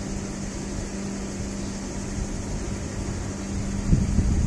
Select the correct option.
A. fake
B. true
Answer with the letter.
B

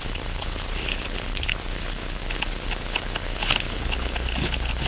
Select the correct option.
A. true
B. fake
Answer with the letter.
B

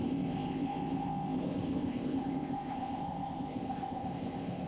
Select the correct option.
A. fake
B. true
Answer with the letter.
A